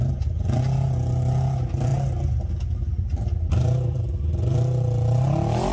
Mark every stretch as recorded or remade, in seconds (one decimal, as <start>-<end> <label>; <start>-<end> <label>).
0.0-5.7 recorded